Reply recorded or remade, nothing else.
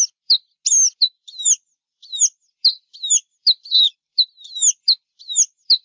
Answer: recorded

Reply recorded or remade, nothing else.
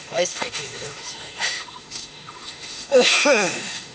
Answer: remade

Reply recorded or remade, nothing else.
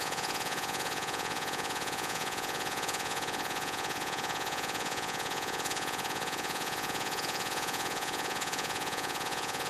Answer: remade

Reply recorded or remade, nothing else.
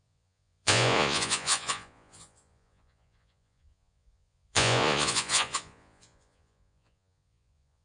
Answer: remade